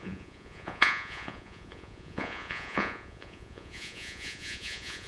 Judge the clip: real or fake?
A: fake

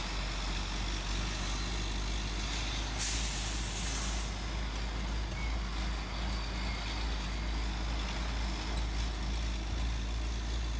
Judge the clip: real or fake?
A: real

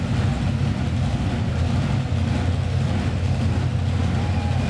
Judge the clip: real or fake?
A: real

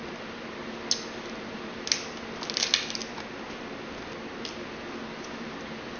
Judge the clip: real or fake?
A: real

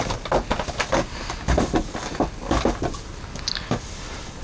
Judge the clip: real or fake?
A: real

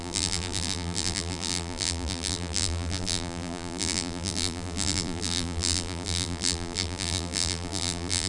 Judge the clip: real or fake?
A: fake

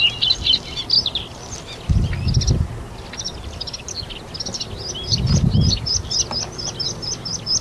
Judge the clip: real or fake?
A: real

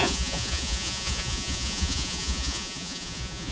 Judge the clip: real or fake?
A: fake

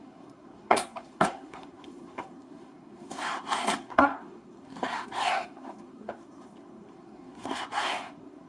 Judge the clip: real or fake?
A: fake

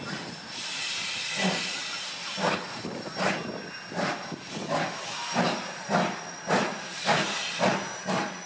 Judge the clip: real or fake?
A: real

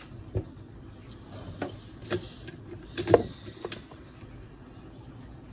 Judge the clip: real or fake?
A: real